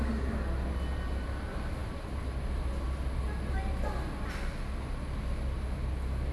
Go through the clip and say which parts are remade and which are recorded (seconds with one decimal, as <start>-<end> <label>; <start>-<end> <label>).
0.0-6.3 recorded